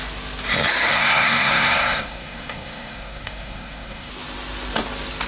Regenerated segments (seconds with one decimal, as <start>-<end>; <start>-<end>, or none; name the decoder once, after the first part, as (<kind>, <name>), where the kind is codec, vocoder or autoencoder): 0.9-4.1 (codec, SNAC)

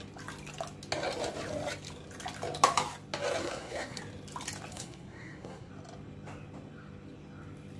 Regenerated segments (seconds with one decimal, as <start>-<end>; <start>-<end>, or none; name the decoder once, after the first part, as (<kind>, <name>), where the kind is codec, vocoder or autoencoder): 3.4-4.0 (codec, SNAC); 4.7-5.7

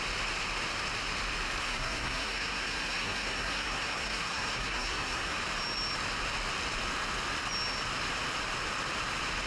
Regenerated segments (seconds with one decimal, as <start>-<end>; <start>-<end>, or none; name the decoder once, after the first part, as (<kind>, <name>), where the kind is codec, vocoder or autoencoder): 1.6-5.4 (codec, SNAC)